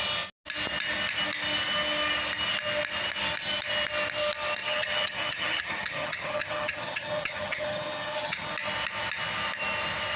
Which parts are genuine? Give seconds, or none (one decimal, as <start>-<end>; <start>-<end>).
0.0-4.6; 8.5-10.2